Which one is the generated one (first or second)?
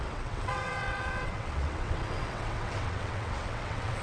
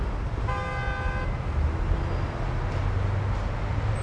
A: first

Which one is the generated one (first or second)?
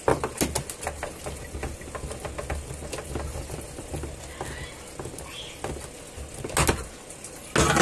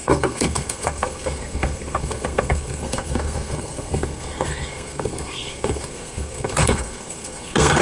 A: second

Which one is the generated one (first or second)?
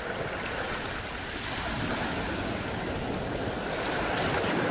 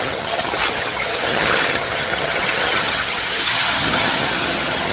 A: second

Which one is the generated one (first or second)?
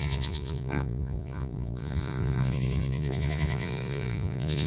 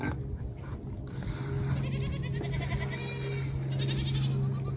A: first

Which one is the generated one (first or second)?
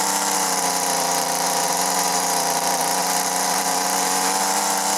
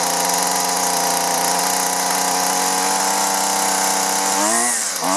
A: first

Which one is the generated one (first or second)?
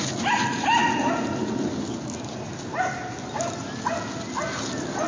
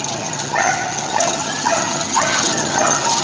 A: second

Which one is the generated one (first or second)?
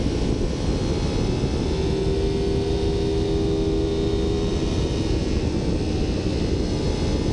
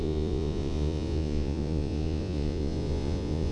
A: second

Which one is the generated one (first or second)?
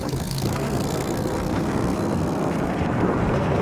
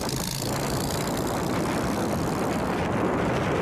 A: first